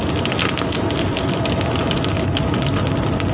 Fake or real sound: real